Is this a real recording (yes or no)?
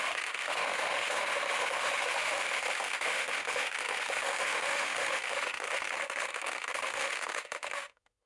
no